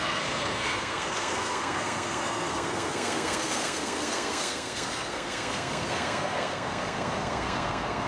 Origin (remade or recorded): remade